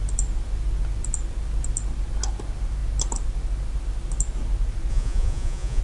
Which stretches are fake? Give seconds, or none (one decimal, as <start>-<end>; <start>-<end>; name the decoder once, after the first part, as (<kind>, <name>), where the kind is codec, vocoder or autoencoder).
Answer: 4.9-5.8 (vocoder, Vocos)